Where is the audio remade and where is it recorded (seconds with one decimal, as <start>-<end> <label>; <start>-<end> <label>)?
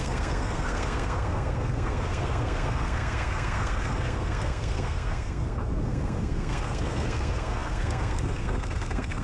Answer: 0.0-9.2 remade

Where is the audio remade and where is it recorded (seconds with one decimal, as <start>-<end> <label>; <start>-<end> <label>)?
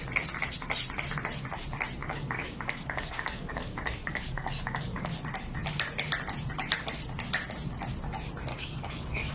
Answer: 0.0-2.0 recorded; 2.0-5.1 remade; 5.1-8.5 recorded; 8.5-9.3 remade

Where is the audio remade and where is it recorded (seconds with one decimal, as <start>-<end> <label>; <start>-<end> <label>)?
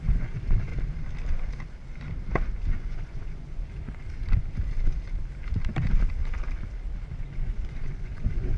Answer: 0.0-0.7 remade; 0.7-2.7 recorded; 2.7-4.0 remade; 4.0-7.2 recorded; 7.2-8.6 remade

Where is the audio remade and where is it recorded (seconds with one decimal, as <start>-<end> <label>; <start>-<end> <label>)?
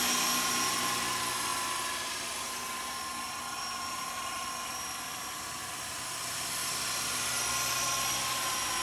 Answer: 0.0-8.8 recorded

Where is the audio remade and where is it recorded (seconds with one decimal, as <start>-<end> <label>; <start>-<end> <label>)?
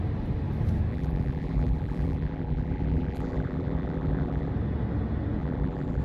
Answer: 0.0-0.9 recorded; 0.9-4.5 remade; 4.5-5.4 recorded; 5.4-6.0 remade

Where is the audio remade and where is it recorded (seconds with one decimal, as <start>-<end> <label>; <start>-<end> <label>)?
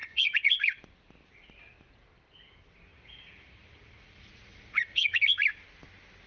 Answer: 0.0-0.8 remade; 0.8-2.9 recorded; 2.9-5.2 remade; 5.2-6.3 recorded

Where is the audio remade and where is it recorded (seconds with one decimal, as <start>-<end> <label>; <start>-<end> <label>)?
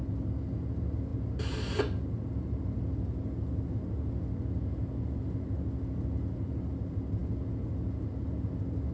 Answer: 0.0-8.9 recorded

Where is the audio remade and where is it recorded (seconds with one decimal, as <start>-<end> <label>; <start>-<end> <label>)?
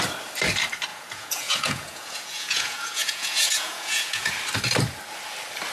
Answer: 0.0-0.9 recorded; 0.9-4.3 remade; 4.3-5.7 recorded